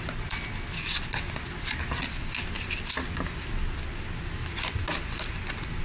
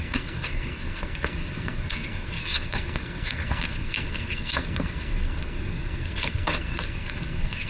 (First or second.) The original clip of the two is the first